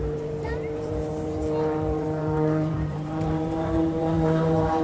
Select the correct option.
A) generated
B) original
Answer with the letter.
A